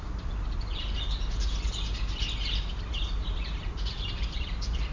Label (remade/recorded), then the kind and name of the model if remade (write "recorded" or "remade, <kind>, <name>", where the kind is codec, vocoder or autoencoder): recorded